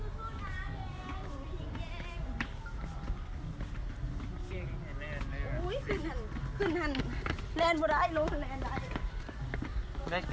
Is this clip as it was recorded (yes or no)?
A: yes